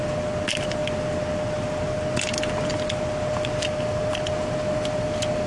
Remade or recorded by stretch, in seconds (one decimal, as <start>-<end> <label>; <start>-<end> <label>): 0.0-5.5 recorded